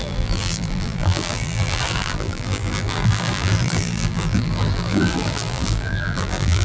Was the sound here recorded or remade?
remade